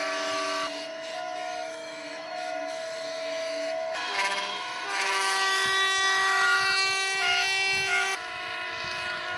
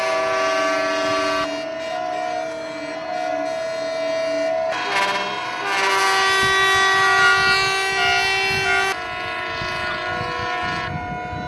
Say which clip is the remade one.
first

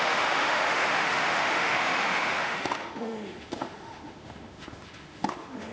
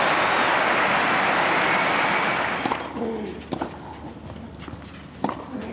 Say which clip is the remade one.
first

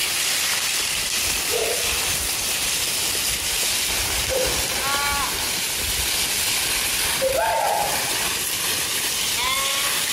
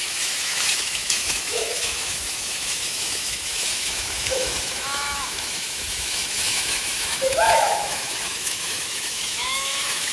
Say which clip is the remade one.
second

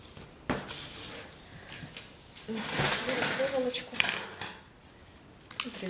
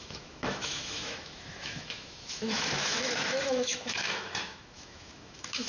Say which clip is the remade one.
second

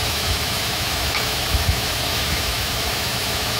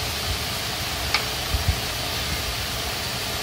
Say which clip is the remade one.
first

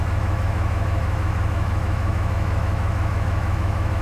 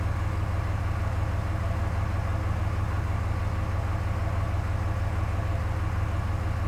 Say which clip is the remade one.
first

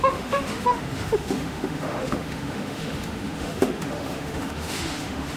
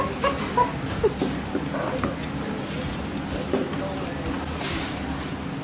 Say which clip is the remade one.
first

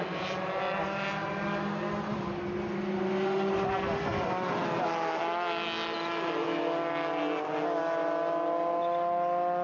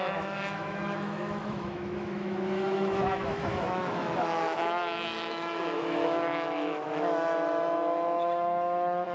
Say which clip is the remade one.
second